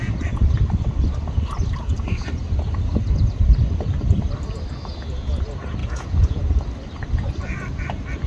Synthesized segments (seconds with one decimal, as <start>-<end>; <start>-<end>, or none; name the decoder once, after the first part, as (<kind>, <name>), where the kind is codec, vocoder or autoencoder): 5.8-6.4 (vocoder, Vocos)

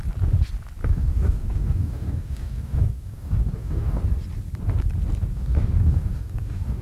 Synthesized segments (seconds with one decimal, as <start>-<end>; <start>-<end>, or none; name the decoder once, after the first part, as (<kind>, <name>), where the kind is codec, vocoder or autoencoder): 0.8-4.0 (codec, DAC); 5.3-6.8

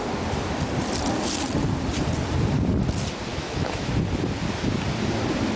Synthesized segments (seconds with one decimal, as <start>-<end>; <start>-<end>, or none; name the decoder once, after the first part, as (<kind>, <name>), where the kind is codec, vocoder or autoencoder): 3.3-3.9 (autoencoder, DAC-VAE)

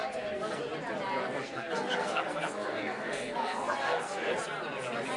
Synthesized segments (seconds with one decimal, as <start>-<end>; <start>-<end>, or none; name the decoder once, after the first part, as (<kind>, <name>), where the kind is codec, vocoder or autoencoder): 0.0-0.6 (codec, SNAC); 1.2-4.3

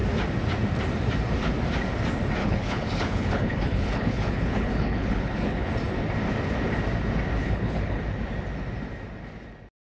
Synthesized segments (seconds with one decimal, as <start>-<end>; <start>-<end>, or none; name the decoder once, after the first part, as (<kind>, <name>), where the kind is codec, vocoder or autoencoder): 2.4-5.7 (codec, HILCodec); 7.4-8.0

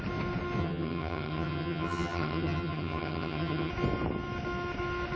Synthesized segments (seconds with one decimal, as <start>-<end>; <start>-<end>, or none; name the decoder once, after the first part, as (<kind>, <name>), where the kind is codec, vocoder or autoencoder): 0.6-3.7 (vocoder, HiFi-GAN)

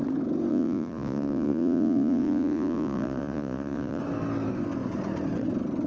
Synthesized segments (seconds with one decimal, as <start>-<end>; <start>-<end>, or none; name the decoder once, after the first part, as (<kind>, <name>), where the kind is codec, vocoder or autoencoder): 0.5-4.0 (vocoder, Vocos)